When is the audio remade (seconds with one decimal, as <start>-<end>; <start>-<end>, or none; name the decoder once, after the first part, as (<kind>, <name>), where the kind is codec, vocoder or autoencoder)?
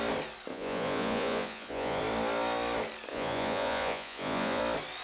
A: 0.5-2.0 (vocoder, Vocos); 3.1-4.6